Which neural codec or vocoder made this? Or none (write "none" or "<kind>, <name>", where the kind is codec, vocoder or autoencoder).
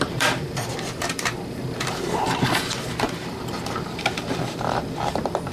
vocoder, BigVGAN v2